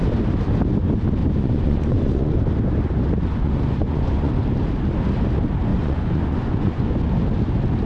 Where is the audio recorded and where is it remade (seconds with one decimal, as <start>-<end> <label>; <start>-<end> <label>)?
0.0-1.2 recorded; 1.2-2.4 remade; 2.4-3.3 recorded; 3.3-4.3 remade; 4.3-5.7 recorded; 5.7-6.9 remade; 6.9-7.9 recorded